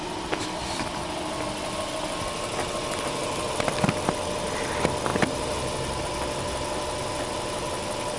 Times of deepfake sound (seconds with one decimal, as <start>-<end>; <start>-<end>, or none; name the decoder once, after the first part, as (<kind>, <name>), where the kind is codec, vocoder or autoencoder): none